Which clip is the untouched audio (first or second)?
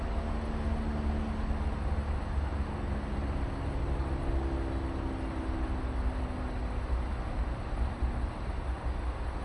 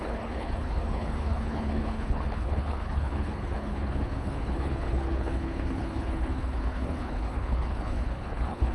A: first